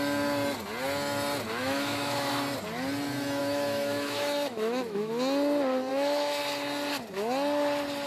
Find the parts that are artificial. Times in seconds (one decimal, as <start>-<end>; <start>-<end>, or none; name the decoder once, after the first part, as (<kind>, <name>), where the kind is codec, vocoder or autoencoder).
1.6-2.3 (autoencoder, DAC-VAE); 3.4-5.1; 5.9-6.4